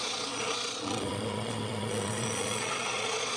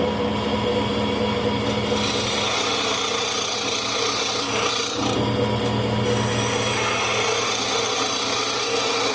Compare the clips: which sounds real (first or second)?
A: second